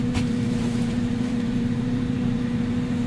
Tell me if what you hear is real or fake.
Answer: fake